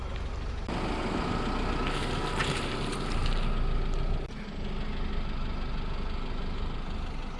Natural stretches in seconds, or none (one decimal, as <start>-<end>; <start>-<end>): 0.0-2.4; 3.2-7.4